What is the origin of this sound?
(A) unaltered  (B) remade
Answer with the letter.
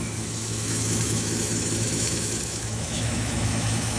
B